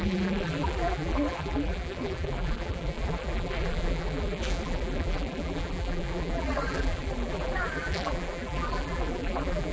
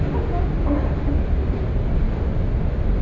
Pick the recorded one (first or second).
second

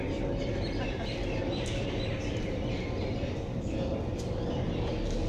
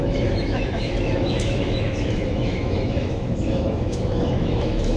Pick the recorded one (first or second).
first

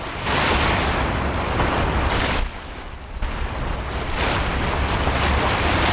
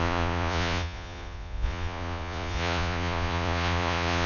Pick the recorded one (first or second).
first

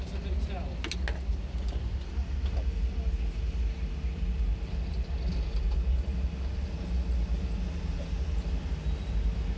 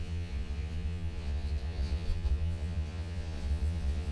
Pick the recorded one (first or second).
first